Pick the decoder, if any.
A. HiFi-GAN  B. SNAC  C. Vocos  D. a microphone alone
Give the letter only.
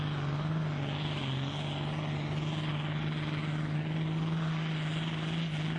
D